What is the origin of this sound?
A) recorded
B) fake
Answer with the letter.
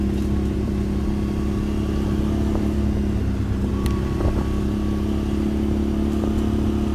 A